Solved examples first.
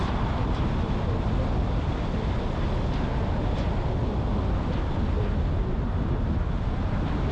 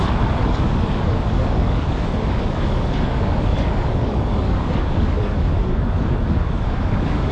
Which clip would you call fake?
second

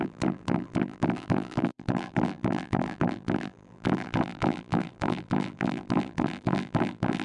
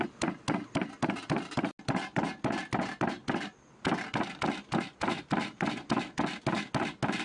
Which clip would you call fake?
first